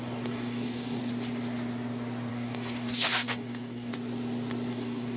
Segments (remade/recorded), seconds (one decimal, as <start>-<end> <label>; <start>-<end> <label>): 0.0-1.0 remade; 1.0-2.3 recorded; 2.3-3.9 remade; 3.9-4.7 recorded; 4.7-5.2 remade